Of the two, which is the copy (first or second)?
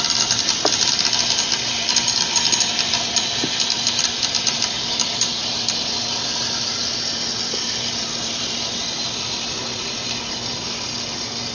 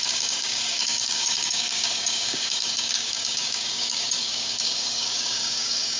second